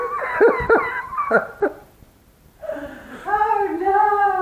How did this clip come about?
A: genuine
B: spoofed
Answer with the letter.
B